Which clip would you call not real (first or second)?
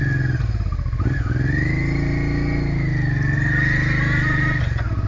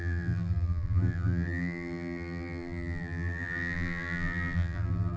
second